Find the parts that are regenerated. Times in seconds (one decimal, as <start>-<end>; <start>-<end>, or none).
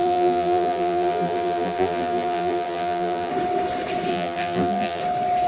0.0-3.3; 4.1-5.0